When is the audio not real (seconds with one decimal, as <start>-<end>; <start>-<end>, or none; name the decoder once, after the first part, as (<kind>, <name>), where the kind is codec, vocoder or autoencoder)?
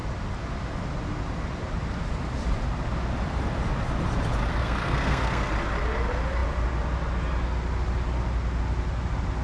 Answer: 4.5-5.5 (codec, SNAC)